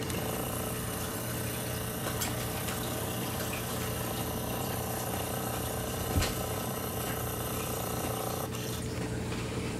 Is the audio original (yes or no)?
no